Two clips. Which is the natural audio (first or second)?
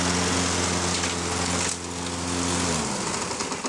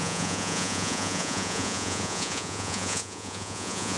first